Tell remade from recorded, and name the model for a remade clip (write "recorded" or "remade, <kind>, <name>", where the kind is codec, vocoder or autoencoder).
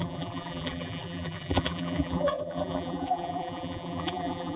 remade, vocoder, BigVGAN v2